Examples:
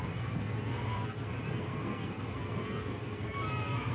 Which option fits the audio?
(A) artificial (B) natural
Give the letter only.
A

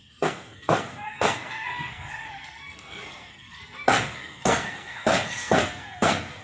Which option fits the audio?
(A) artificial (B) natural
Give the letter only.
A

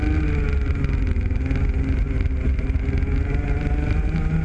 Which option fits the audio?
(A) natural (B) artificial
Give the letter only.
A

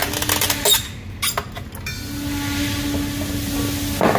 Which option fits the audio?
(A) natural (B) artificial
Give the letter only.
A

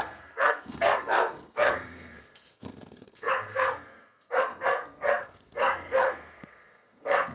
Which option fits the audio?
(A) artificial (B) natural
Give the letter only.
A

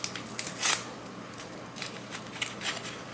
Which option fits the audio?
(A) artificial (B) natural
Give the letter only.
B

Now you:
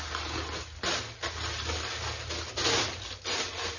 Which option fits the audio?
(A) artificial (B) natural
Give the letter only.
B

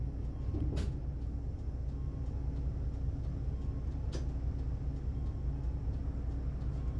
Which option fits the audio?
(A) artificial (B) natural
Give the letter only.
B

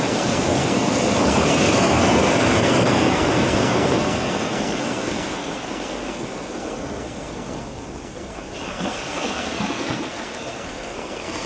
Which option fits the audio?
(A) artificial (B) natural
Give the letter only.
A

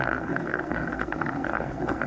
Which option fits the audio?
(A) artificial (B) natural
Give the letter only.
A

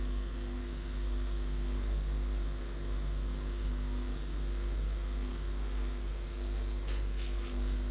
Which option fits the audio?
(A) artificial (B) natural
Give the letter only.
A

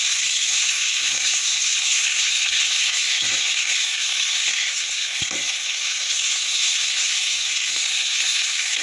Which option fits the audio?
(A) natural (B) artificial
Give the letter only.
B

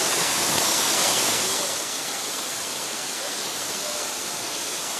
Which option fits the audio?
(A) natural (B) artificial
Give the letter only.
B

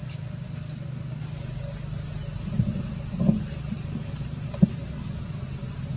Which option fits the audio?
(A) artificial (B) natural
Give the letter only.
B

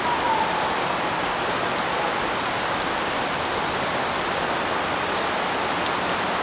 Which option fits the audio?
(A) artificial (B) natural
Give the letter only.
B